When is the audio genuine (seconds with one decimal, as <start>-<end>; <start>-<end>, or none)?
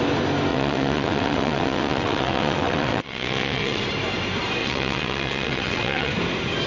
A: 0.0-0.5; 3.8-4.6; 6.1-6.7